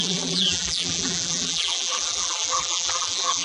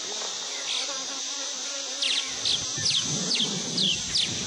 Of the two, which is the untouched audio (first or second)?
second